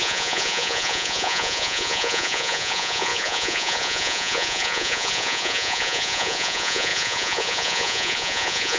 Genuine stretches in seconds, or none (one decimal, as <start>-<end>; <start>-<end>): none